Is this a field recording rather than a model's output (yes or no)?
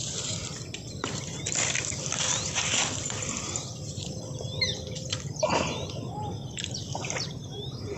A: no